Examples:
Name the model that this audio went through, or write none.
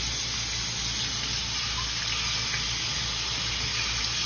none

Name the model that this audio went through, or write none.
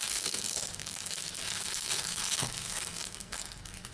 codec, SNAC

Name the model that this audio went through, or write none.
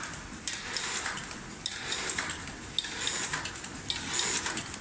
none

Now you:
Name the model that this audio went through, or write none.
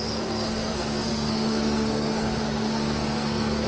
codec, SNAC